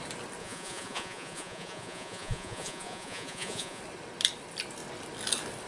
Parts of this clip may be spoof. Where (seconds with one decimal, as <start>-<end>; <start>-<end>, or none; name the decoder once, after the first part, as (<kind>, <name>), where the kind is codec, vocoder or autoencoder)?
0.4-3.8 (vocoder, Vocos)

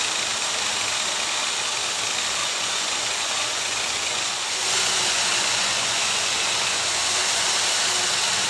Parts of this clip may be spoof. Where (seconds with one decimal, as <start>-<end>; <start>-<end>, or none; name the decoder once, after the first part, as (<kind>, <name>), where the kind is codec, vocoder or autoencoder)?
2.4-7.5 (vocoder, Vocos)